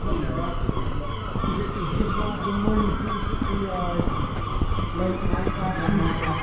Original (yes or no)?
yes